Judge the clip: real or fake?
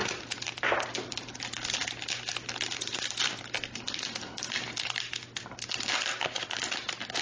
real